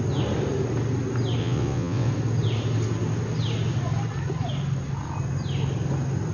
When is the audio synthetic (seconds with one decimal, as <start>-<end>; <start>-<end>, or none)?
1.4-2.1